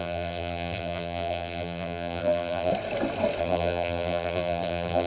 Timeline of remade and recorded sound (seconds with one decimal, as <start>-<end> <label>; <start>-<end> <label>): 0.0-2.7 remade; 2.7-3.4 recorded; 3.4-5.1 remade

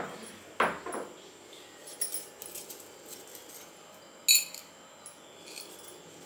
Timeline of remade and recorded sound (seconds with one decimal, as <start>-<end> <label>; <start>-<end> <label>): 0.0-6.3 recorded

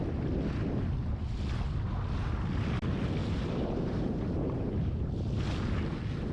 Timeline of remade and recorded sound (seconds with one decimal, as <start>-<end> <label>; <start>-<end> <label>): 0.0-3.2 recorded; 3.2-5.1 remade; 5.1-6.3 recorded

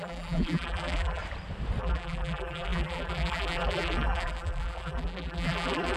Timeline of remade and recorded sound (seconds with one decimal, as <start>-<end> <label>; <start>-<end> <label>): 0.0-1.2 remade; 1.2-1.8 recorded; 1.8-6.0 remade

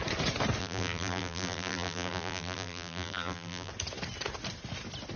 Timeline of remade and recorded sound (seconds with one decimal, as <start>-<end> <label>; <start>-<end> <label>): 0.0-0.6 recorded; 0.6-3.7 remade; 3.7-5.2 recorded

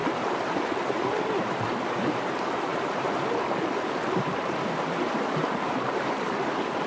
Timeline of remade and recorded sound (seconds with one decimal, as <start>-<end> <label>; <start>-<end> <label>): 0.0-6.9 remade

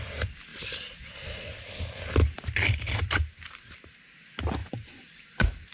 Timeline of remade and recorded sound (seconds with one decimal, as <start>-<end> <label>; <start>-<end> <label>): 0.0-2.2 recorded; 2.2-4.0 remade; 4.0-4.6 recorded; 4.6-5.7 remade